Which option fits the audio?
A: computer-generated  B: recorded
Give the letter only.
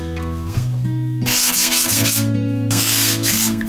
A